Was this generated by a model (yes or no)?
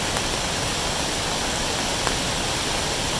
no